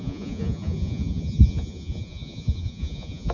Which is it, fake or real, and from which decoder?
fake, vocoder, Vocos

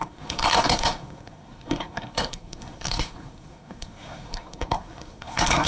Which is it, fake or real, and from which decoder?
fake, codec, SNAC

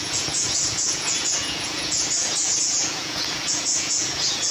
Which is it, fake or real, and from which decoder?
fake, vocoder, Vocos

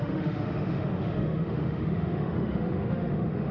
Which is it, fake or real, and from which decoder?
fake, autoencoder, DAC-VAE